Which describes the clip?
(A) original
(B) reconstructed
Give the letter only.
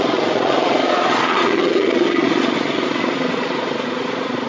B